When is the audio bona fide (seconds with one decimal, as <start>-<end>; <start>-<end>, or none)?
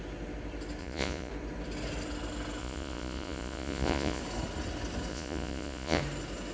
0.0-0.8; 1.3-2.6; 4.2-5.1; 6.0-6.5